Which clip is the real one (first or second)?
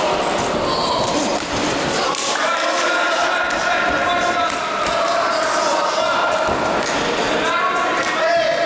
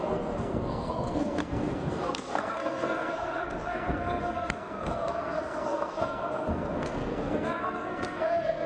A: first